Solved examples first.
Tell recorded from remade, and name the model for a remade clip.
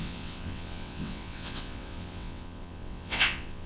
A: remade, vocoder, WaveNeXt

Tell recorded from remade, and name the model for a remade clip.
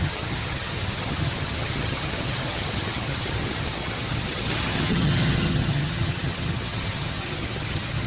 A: remade, vocoder, HiFi-GAN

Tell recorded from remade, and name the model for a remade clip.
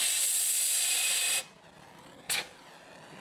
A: recorded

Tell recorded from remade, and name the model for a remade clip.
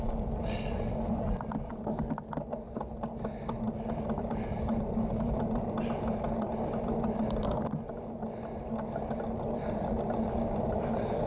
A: recorded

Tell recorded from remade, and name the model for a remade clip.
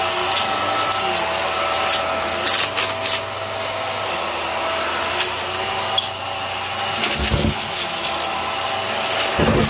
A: recorded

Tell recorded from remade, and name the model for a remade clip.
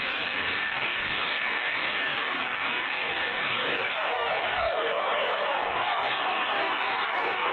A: remade, codec, DAC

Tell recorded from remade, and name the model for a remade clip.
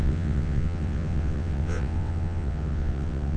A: remade, vocoder, WaveNeXt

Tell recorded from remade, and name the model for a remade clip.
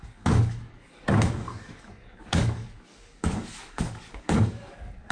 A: remade, codec, DAC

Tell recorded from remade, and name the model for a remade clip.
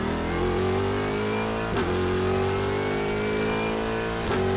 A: recorded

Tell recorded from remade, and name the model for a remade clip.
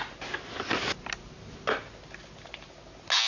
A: recorded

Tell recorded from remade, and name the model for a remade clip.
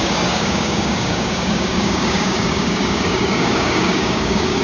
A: remade, codec, DAC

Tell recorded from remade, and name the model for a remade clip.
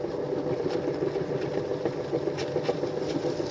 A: recorded